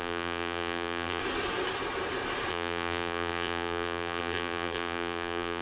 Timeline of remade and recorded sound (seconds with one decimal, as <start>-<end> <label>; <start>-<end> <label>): 0.0-1.2 remade; 1.2-2.5 recorded; 2.5-5.6 remade